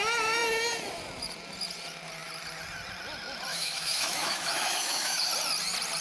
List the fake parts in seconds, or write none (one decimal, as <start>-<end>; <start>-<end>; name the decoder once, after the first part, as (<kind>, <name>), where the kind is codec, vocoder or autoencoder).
3.5-5.3 (autoencoder, DAC-VAE)